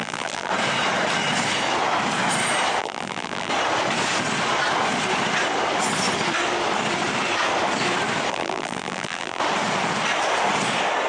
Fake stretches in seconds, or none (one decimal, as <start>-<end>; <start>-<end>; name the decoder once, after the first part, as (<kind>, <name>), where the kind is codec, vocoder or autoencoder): 0.0-0.5 (vocoder, BigVGAN v2); 2.8-3.5; 8.3-9.4